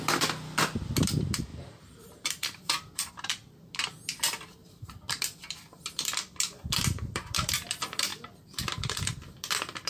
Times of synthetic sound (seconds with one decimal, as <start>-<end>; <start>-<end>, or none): 1.5-3.1; 4.6-5.2